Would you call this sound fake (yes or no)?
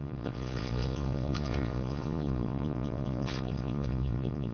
yes